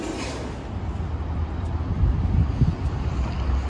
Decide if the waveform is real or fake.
real